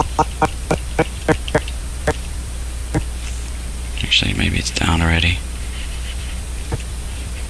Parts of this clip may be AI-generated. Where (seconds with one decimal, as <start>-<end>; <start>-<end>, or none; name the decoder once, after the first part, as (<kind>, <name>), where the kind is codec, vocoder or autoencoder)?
0.0-2.8 (vocoder, BigVGAN v2); 3.7-7.5